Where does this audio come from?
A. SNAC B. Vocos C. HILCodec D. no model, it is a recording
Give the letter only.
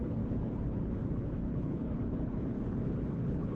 C